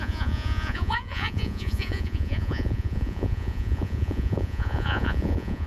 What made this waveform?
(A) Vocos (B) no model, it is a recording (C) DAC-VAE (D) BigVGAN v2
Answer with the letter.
A